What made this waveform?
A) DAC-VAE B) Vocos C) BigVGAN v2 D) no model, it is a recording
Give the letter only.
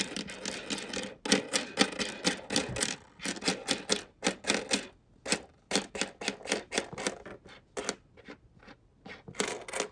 D